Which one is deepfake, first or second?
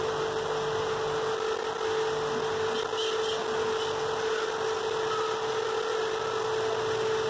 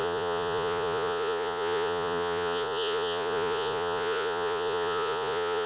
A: second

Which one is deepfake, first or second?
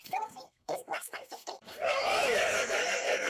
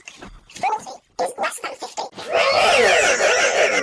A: first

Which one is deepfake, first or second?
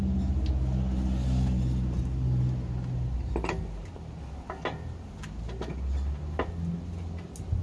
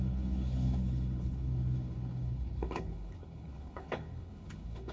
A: second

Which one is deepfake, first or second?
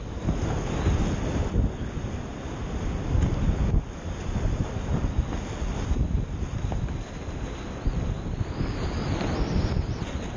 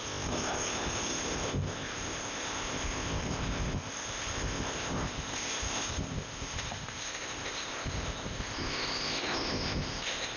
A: second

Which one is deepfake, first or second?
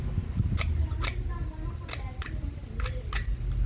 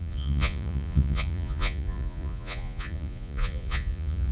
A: second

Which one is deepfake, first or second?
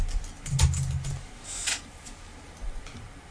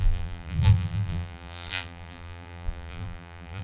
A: second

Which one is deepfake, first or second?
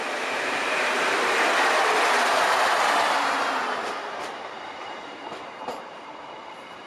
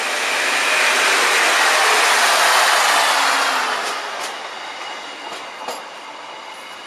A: first